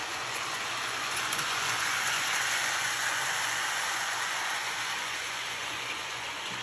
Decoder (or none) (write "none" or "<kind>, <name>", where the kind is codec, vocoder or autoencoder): vocoder, Vocos